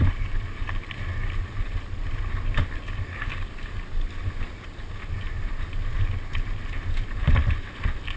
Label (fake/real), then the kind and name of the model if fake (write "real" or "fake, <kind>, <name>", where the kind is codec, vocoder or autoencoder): real